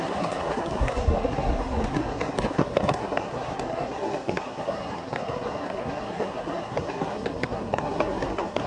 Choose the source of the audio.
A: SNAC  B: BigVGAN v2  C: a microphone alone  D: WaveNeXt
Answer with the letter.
A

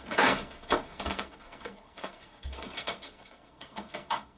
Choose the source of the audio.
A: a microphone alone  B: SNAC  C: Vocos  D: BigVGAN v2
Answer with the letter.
B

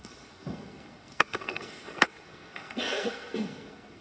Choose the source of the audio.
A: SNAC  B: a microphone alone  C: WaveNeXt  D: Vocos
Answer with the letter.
A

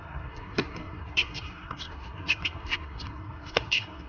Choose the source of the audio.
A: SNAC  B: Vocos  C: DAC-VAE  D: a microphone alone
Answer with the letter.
A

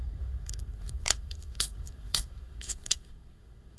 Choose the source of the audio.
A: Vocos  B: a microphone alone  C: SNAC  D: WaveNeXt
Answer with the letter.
C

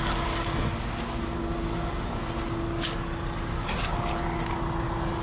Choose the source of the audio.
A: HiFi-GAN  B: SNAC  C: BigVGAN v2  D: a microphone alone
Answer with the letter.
D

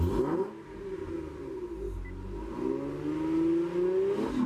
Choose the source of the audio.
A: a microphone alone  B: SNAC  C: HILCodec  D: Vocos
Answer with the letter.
A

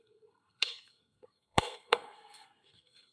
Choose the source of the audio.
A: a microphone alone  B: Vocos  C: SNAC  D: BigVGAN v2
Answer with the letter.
C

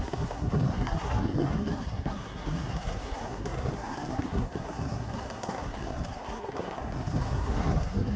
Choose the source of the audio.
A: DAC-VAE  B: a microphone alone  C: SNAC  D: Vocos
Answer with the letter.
C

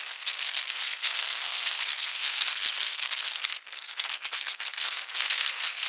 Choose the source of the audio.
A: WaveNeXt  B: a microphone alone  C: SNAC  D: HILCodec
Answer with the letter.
C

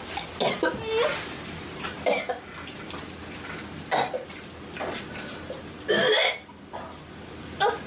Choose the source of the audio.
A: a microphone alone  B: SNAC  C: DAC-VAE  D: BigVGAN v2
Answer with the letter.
A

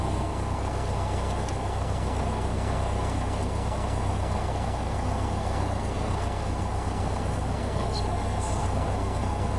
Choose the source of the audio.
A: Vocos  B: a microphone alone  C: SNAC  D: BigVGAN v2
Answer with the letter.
C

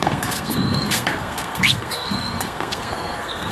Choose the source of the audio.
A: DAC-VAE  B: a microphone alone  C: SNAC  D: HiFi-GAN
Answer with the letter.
C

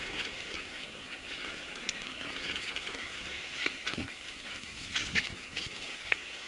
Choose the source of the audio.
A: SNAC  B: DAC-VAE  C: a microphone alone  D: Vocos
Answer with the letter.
A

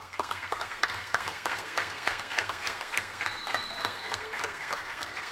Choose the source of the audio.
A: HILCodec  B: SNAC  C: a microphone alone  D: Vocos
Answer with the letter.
B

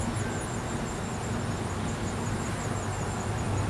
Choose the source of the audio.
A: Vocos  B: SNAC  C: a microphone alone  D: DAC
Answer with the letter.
C